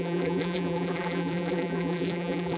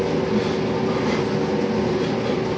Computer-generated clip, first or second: first